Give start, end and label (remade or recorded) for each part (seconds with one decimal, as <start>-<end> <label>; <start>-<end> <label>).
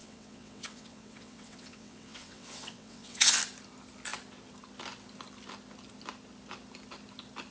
0.0-3.4 remade; 3.4-7.5 recorded